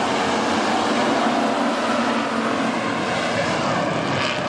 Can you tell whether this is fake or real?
real